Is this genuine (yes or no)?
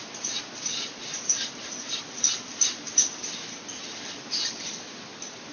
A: no